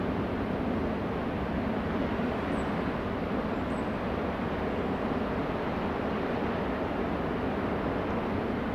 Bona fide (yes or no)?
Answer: yes